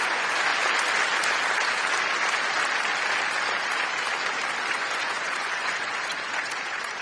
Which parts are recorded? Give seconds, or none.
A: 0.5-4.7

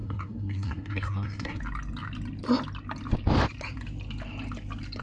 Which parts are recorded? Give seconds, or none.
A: 1.6-5.0

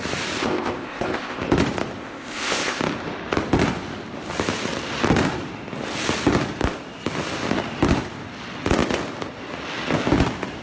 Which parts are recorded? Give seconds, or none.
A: 0.0-0.4; 1.4-2.0; 2.8-10.6

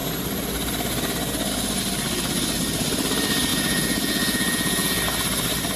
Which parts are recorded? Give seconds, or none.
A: 0.0-3.5; 5.0-5.8

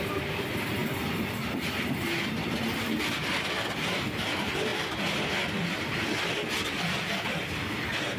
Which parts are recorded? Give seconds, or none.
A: 0.0-8.2

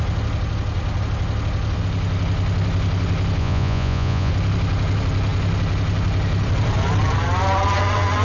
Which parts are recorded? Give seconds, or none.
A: 0.0-3.4; 4.3-8.2